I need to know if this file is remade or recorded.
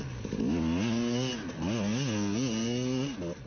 recorded